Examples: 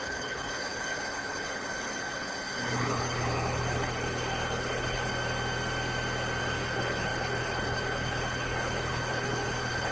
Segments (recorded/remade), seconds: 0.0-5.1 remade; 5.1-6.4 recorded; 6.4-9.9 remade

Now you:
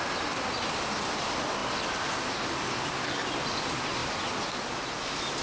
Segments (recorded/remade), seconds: 0.0-5.4 recorded

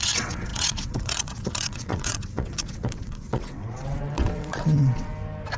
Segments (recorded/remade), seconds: 0.0-5.1 remade; 5.1-5.6 recorded

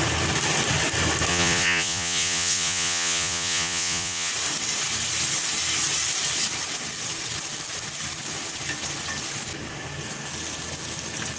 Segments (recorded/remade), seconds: 0.0-1.3 recorded; 1.3-4.3 remade; 4.3-11.4 recorded